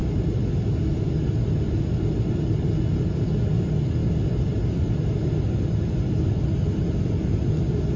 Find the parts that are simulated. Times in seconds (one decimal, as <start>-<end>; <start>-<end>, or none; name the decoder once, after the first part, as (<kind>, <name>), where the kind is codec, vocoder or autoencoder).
none